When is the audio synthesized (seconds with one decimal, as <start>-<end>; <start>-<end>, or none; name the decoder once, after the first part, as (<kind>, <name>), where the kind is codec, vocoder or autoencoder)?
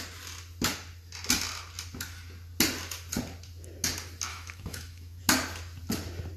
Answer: 4.3-5.2 (autoencoder, DAC-VAE)